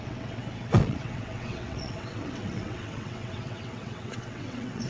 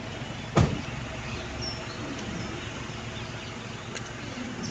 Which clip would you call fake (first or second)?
first